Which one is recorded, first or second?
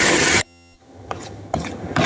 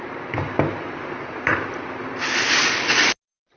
second